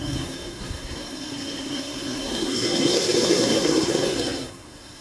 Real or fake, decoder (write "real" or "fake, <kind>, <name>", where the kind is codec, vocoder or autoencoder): fake, codec, SNAC